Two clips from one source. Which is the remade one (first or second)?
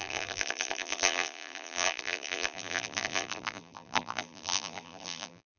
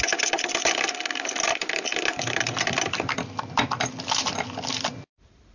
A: first